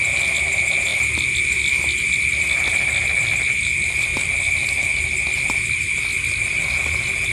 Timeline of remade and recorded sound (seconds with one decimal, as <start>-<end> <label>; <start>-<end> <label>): 0.0-7.3 recorded